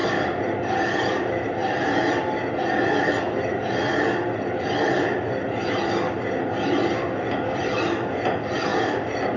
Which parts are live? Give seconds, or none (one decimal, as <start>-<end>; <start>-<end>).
0.7-9.4